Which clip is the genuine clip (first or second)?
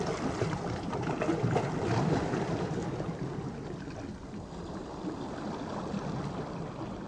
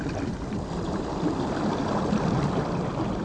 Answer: first